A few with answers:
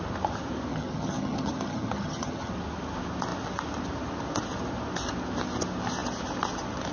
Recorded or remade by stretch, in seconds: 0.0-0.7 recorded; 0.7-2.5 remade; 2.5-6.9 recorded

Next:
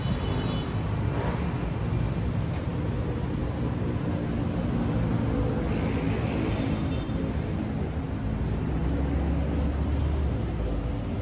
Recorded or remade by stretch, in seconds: 0.0-11.2 recorded

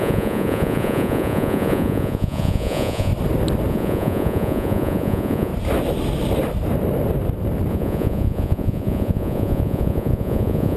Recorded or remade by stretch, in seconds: 0.0-3.1 remade; 3.1-3.7 recorded; 3.7-5.5 remade; 5.5-7.7 recorded; 7.7-10.8 remade

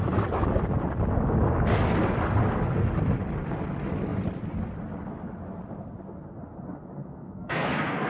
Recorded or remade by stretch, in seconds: 0.0-7.0 recorded; 7.0-8.1 remade

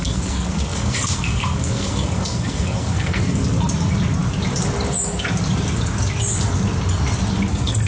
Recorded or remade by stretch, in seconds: 0.0-3.4 remade; 3.4-7.5 recorded; 7.5-7.9 remade

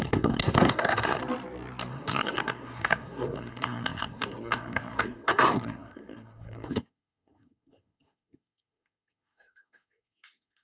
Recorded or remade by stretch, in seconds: 0.0-1.2 remade; 1.2-1.9 recorded; 1.9-10.6 remade

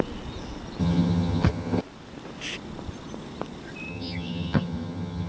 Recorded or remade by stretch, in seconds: 0.0-0.8 recorded; 0.8-1.8 remade; 1.8-3.9 recorded; 3.9-5.3 remade

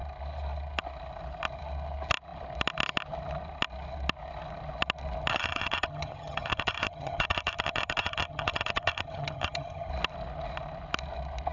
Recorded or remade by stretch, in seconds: 0.0-5.3 recorded; 5.3-9.9 remade; 9.9-11.5 recorded